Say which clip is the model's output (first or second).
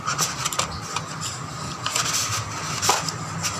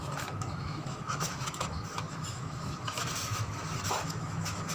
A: second